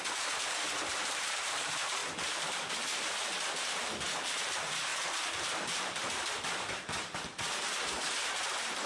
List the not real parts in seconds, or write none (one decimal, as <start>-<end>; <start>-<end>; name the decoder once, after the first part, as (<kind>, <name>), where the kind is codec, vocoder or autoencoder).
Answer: 0.0-4.9 (vocoder, BigVGAN v2); 5.4-8.9